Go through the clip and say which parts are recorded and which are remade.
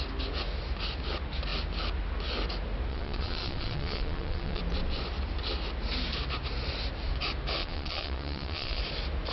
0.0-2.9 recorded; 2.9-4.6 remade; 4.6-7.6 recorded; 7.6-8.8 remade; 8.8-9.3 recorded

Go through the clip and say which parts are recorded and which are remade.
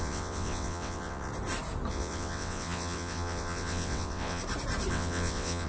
0.0-1.3 remade; 1.3-1.9 recorded; 1.9-4.4 remade; 4.4-4.9 recorded; 4.9-5.7 remade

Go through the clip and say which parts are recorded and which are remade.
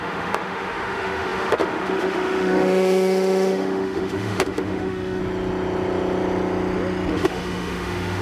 0.0-5.2 remade; 5.2-7.1 recorded; 7.1-8.2 remade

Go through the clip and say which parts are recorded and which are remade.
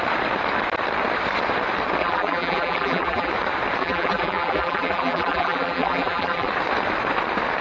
0.0-2.0 recorded; 2.0-3.3 remade; 3.3-3.8 recorded; 3.8-6.5 remade; 6.5-7.6 recorded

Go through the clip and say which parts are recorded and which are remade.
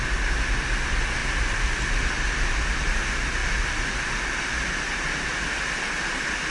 0.0-6.5 recorded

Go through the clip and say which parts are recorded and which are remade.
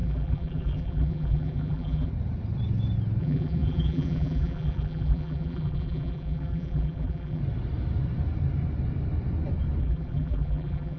0.0-2.1 remade; 2.1-3.2 recorded; 3.2-7.4 remade; 7.4-9.8 recorded; 9.8-11.0 remade